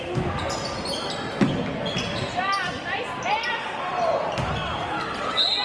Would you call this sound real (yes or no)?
yes